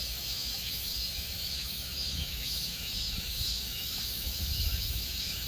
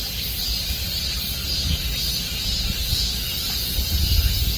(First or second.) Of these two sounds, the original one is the second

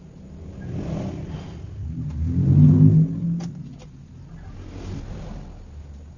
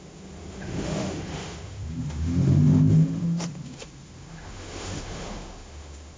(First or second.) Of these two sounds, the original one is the first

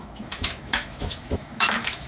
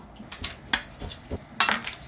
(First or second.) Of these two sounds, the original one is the second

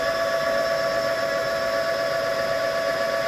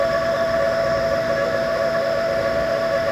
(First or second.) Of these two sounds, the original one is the first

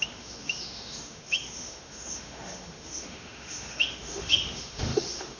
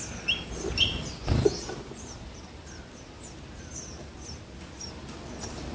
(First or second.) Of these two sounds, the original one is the second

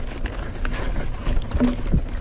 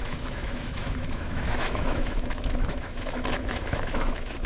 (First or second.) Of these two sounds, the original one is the first